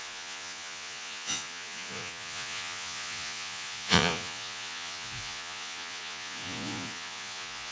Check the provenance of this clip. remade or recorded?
remade